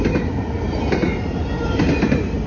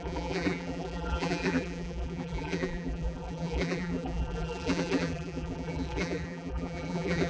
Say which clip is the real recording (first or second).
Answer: first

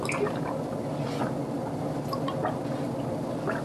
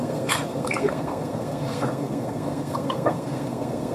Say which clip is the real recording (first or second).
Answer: first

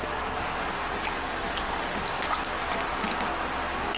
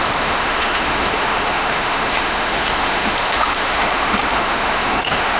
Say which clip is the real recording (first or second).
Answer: first